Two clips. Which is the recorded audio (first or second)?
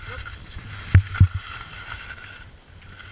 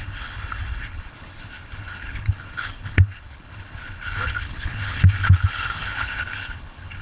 first